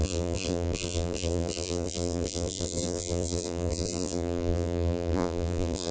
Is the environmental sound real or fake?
fake